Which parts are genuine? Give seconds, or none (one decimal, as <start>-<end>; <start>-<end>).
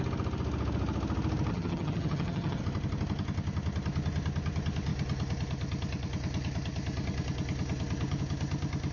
0.0-1.5; 2.6-8.9